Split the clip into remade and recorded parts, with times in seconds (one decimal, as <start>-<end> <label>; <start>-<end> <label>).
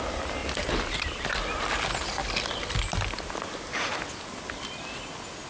0.0-5.5 recorded